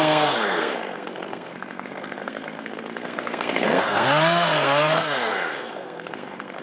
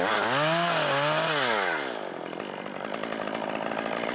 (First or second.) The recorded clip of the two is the second